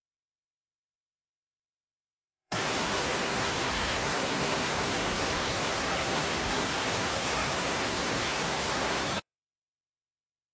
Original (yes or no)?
no